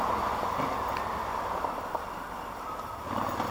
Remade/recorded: recorded